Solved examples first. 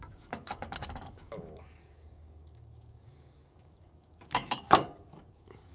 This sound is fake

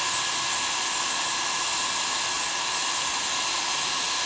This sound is real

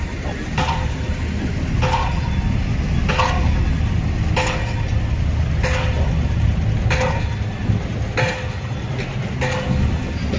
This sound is real